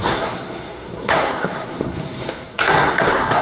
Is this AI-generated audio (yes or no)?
yes